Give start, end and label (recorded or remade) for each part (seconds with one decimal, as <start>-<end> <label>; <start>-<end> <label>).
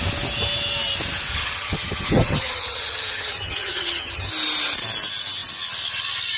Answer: 0.0-1.3 recorded; 1.3-4.3 remade; 4.3-6.4 recorded